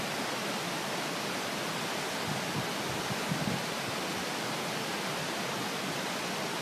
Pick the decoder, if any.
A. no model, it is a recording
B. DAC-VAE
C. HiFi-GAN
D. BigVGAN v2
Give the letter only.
A